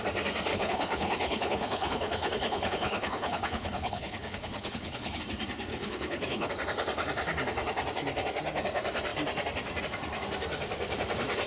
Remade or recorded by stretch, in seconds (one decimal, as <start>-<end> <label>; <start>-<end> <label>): 0.0-0.5 recorded; 0.5-5.2 remade; 5.2-5.7 recorded; 5.7-6.5 remade; 6.5-11.5 recorded